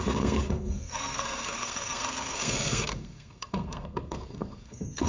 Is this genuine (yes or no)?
no